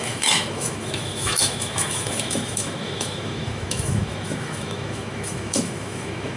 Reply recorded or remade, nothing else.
remade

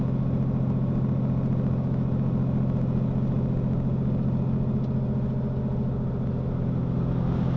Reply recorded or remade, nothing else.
recorded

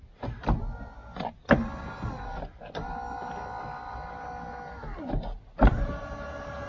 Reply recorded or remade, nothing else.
recorded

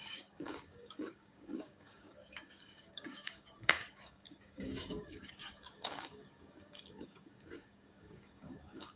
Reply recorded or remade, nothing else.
remade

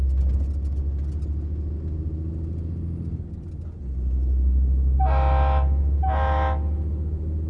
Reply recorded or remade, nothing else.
recorded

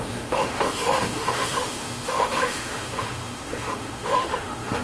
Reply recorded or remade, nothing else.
remade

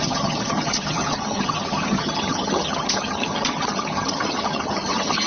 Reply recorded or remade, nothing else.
remade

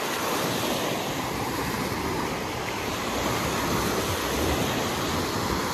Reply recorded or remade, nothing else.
recorded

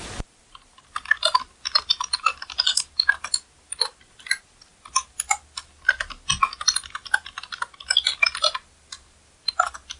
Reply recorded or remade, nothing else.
recorded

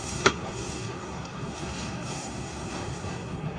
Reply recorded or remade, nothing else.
remade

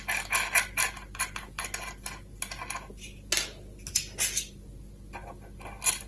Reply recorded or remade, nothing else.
recorded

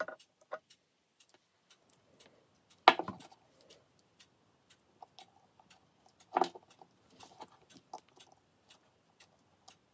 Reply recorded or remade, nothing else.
recorded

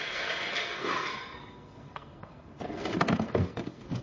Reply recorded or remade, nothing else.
remade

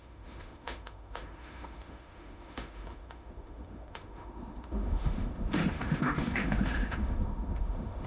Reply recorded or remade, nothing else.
remade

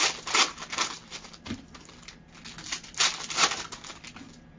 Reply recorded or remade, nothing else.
recorded